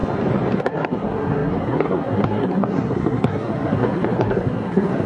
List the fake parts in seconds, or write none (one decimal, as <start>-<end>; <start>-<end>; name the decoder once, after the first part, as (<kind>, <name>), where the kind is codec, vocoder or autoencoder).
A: 0.6-5.1 (codec, SNAC)